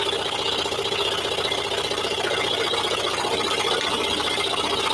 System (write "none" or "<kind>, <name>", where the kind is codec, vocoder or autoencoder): none